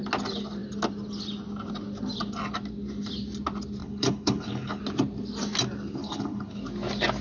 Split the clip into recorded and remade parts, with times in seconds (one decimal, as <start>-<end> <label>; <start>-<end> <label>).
0.0-3.8 recorded; 3.8-4.8 remade; 4.8-6.0 recorded; 6.0-6.6 remade; 6.6-7.2 recorded